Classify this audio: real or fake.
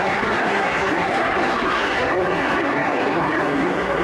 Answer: fake